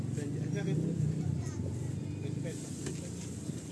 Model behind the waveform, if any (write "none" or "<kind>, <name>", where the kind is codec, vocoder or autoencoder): none